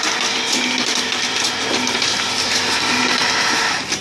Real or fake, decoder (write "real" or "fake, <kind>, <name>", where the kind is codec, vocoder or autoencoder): fake, vocoder, BigVGAN v2